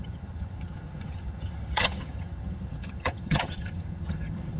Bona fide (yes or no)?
no